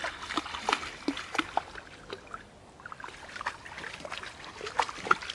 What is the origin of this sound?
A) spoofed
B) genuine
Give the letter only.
B